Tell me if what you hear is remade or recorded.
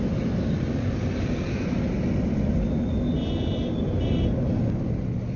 recorded